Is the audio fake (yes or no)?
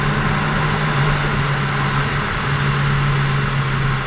no